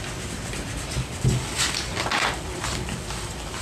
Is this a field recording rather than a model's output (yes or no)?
yes